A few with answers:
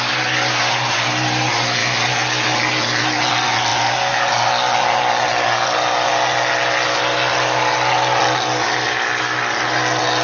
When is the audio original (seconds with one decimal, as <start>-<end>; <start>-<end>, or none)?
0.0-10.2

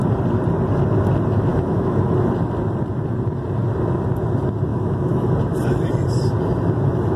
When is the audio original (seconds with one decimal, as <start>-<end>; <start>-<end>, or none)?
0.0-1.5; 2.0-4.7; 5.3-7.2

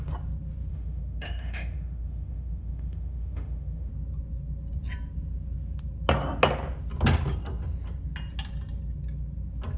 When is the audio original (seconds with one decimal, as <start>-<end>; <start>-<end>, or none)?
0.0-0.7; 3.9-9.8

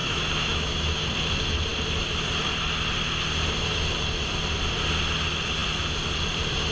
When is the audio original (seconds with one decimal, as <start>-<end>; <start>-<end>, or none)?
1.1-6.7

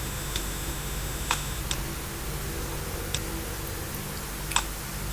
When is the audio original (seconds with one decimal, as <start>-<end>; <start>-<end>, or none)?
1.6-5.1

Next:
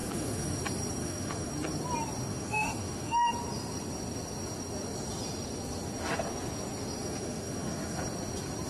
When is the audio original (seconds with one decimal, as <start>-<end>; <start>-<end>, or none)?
0.6-1.0; 1.5-2.3; 3.3-7.0; 8.0-8.7

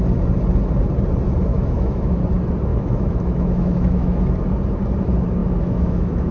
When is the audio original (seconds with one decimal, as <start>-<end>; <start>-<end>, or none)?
0.0-1.5; 2.2-2.7; 4.2-5.4